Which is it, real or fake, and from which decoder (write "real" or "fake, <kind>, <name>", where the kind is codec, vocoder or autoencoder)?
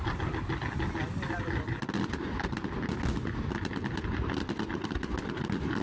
real